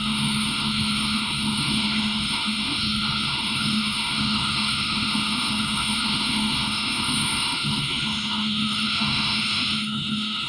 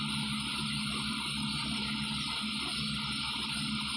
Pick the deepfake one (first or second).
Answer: first